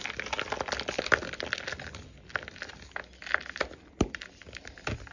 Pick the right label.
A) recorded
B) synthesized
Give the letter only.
A